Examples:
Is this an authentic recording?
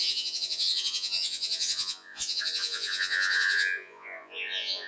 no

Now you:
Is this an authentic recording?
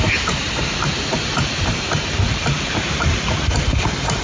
no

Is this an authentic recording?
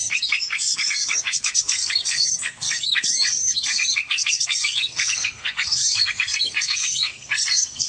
no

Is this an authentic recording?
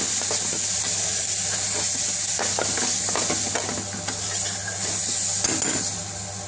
yes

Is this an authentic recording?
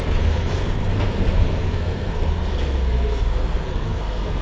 no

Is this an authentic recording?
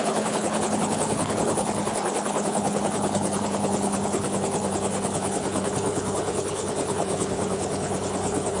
no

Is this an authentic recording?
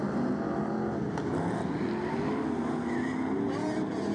yes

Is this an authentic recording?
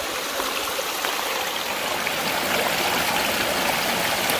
yes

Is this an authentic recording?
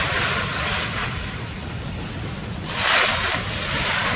yes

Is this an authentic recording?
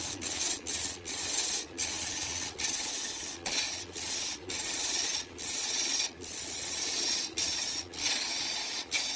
no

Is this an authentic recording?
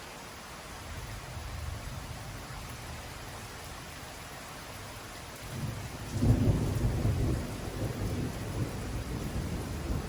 no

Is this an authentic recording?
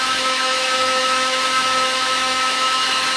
no